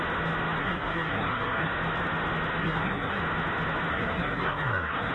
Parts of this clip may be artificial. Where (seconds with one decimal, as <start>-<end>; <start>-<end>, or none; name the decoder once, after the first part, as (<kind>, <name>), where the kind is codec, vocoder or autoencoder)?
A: 0.6-1.7 (codec, SNAC); 2.6-3.2; 3.9-5.1